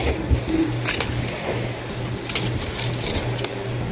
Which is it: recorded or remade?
recorded